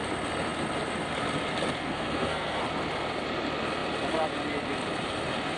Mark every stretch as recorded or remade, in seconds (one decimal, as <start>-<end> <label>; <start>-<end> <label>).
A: 0.0-1.8 recorded; 1.8-2.6 remade; 2.6-5.6 recorded